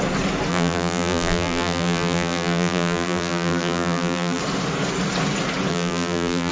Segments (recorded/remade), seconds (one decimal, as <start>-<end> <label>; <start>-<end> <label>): 0.0-0.5 recorded; 0.5-4.4 remade; 4.4-5.7 recorded; 5.7-6.5 remade